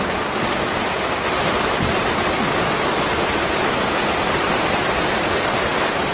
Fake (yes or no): no